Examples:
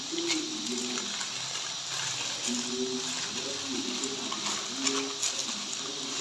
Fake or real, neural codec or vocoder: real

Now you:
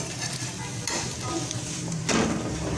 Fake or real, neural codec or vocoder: fake, vocoder, BigVGAN v2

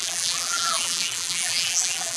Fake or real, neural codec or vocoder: fake, vocoder, BigVGAN v2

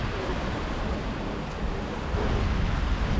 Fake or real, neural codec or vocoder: real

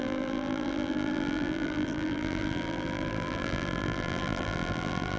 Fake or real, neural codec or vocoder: fake, vocoder, BigVGAN v2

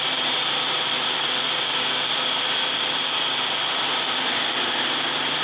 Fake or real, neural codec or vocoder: fake, vocoder, BigVGAN v2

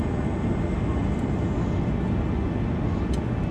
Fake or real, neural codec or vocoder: real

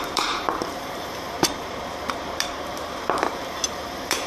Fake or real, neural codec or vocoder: fake, vocoder, BigVGAN v2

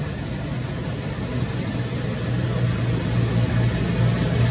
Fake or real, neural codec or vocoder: real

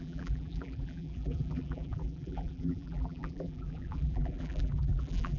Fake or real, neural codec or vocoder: fake, vocoder, BigVGAN v2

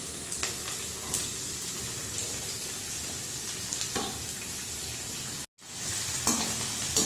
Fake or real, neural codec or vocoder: real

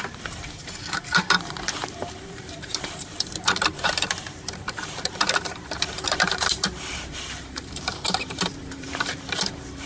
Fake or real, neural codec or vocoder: fake, vocoder, BigVGAN v2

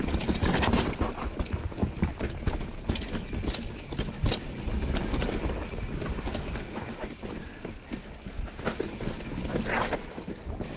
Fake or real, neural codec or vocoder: real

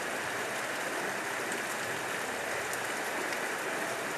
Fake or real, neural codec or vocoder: real